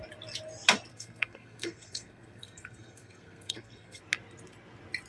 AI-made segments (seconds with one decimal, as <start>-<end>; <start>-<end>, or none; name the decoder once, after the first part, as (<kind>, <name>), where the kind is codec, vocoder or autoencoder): 0.9-4.0 (codec, SNAC)